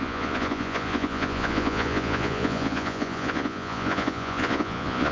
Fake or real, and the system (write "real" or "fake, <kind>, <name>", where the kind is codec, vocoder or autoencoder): fake, vocoder, Vocos